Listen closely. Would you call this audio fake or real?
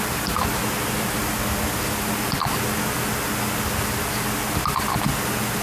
real